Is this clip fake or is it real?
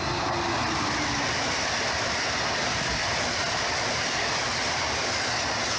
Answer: real